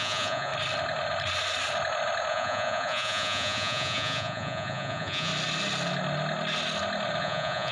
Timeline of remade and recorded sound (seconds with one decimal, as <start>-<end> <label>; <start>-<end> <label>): 0.0-0.5 remade; 0.5-2.3 recorded; 2.3-5.3 remade; 5.3-7.2 recorded; 7.2-7.7 remade